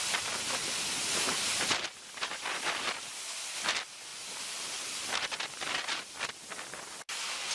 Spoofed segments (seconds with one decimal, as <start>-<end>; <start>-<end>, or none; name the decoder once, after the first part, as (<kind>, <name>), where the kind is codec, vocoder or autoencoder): 1.3-3.5 (vocoder, BigVGAN v2); 4.1-6.1